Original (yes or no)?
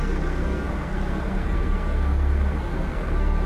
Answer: no